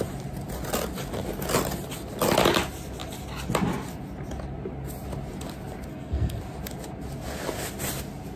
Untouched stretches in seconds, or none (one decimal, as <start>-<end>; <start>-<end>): 0.0-5.9; 6.4-8.4